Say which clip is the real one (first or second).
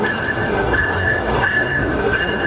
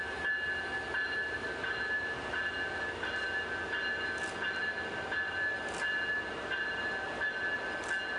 second